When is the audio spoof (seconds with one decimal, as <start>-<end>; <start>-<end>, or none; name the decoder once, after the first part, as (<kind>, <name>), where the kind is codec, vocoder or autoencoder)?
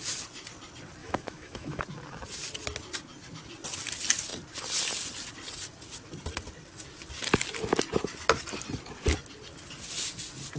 1.0-1.8 (autoencoder, DAC-VAE)